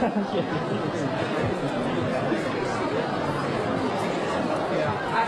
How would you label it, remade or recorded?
recorded